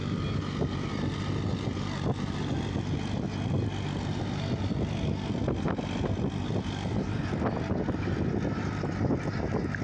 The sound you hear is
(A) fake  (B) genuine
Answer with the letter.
B